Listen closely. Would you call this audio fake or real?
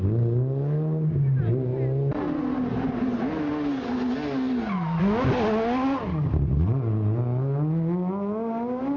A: real